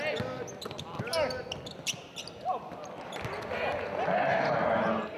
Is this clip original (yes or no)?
yes